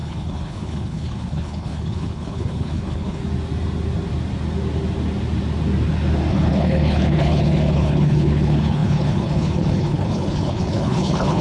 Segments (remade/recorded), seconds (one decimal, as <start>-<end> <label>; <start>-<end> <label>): 0.0-3.2 remade; 3.2-6.3 recorded; 6.3-11.4 remade